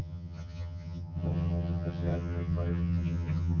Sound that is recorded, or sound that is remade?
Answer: remade